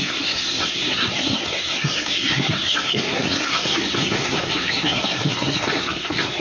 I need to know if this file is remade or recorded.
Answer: remade